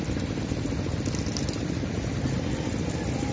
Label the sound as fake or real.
real